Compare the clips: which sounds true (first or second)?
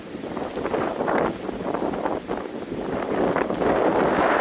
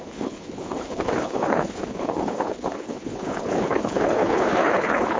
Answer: first